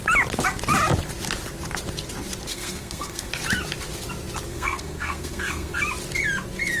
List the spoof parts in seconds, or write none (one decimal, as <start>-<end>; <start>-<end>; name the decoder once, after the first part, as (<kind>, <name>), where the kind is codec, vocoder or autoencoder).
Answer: 2.5-3.3 (codec, SNAC); 4.5-5.8